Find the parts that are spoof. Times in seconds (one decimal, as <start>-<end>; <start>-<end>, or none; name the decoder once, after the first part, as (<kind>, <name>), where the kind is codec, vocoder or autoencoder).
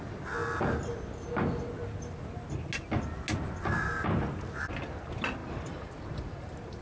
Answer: 5.4-6.8 (vocoder, BigVGAN v2)